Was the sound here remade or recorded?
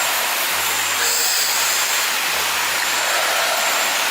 recorded